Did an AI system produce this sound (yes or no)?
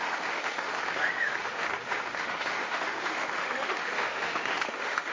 yes